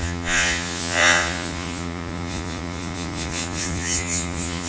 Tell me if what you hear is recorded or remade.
remade